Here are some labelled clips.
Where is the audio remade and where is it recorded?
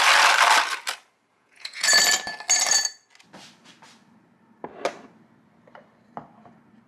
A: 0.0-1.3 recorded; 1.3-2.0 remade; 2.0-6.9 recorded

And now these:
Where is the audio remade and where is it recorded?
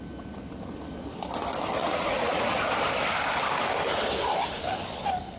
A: 0.0-1.8 recorded; 1.8-2.5 remade; 2.5-5.4 recorded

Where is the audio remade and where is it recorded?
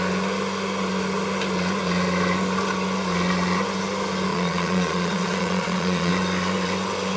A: 0.0-4.3 recorded; 4.3-6.1 remade; 6.1-7.2 recorded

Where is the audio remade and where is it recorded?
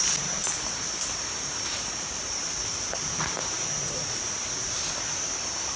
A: 0.0-2.7 recorded; 2.7-4.8 remade; 4.8-5.8 recorded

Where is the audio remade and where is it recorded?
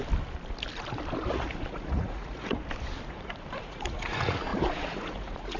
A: 0.0-1.3 recorded; 1.3-2.6 remade; 2.6-3.6 recorded; 3.6-5.6 remade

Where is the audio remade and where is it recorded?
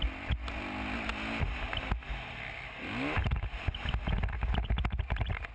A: 0.0-5.5 recorded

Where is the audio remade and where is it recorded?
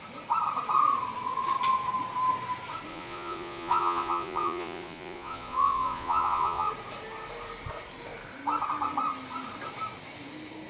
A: 0.0-2.9 recorded; 2.9-6.7 remade; 6.7-10.7 recorded